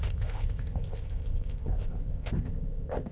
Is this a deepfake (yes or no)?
yes